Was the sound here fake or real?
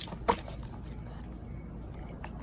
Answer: real